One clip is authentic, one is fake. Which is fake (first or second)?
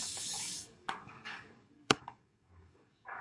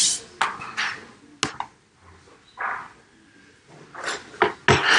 first